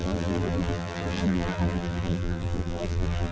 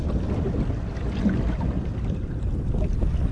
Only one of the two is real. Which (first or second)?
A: second